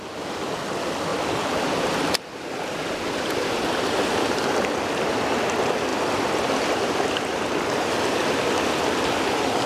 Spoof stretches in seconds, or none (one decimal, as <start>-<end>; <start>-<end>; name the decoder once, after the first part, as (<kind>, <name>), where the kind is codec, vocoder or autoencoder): 1.1-5.2 (vocoder, BigVGAN v2); 5.9-7.5